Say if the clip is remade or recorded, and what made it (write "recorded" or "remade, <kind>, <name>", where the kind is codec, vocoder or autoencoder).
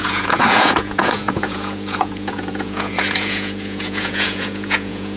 remade, vocoder, Vocos